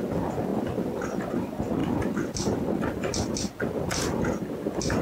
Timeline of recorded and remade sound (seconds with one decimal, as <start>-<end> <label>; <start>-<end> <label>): 0.0-5.0 recorded